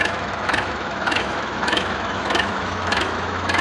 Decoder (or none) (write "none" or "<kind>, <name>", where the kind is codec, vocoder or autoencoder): autoencoder, DAC-VAE